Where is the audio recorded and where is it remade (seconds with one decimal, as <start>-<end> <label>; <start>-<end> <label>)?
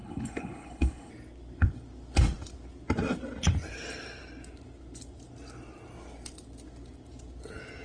0.0-1.1 remade; 1.1-7.8 recorded